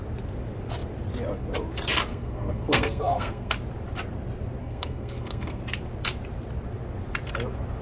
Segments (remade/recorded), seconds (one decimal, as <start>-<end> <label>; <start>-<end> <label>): 0.0-2.1 recorded; 2.1-3.5 remade; 3.5-4.6 recorded; 4.6-5.6 remade; 5.6-7.8 recorded